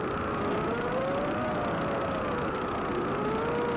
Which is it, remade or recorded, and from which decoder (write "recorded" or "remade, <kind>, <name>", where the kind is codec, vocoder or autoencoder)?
recorded